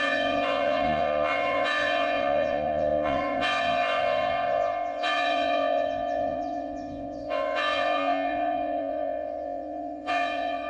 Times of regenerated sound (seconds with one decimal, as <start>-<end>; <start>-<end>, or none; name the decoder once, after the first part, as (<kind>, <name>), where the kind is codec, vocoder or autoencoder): 0.0-10.7 (vocoder, Vocos)